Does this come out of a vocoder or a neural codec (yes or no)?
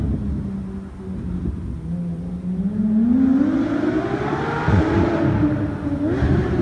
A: no